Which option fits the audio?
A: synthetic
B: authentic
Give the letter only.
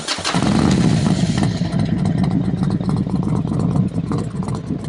B